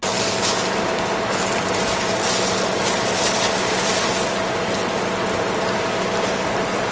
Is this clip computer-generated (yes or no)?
no